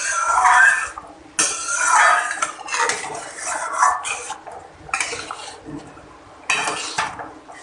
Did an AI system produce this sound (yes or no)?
no